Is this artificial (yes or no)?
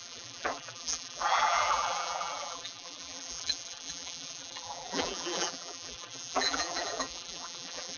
yes